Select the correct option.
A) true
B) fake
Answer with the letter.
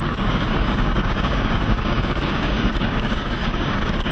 B